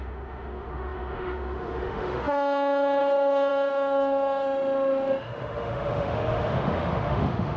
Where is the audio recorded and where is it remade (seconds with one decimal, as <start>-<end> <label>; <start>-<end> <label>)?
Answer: 0.0-7.6 remade